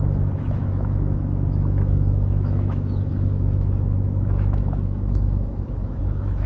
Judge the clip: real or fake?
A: fake